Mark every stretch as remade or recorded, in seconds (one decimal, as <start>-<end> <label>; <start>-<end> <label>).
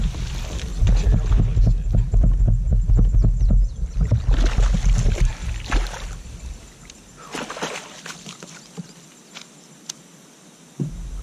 0.0-11.2 recorded